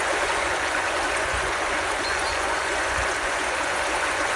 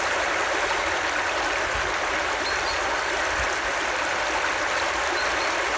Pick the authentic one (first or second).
second